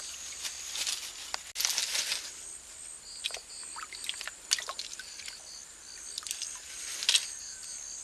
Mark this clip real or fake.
real